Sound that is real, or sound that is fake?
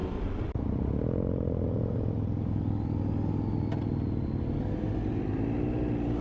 real